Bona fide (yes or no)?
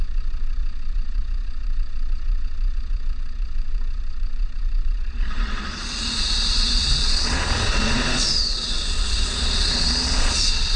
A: no